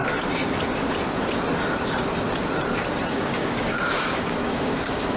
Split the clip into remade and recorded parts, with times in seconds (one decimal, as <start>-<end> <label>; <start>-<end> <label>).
0.0-3.1 recorded; 3.1-5.2 remade